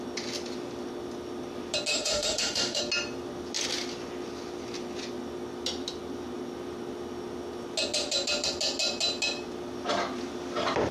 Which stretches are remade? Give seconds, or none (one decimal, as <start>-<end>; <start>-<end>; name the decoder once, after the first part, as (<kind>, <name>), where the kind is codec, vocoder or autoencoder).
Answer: 1.9-2.8 (autoencoder, DAC-VAE)